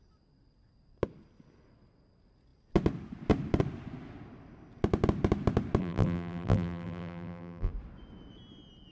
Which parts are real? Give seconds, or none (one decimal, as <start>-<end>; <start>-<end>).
0.0-5.8; 7.7-8.9